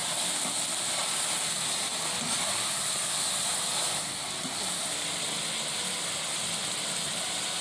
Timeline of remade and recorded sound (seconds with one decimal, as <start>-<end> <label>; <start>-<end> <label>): 0.0-7.6 recorded